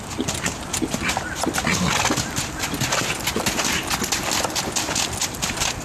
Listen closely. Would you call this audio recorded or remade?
recorded